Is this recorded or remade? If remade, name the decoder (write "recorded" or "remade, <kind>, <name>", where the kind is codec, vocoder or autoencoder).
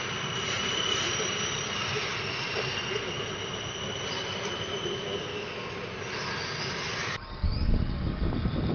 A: recorded